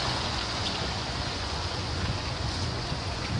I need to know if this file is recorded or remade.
remade